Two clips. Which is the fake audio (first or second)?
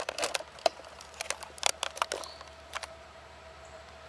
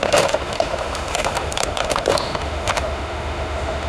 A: second